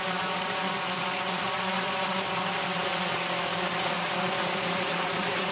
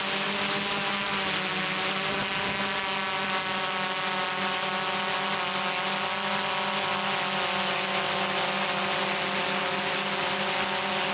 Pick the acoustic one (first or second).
second